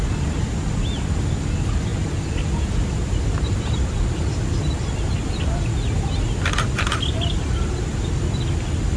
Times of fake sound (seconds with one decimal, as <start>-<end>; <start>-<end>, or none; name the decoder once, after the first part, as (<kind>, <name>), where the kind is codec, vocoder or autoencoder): none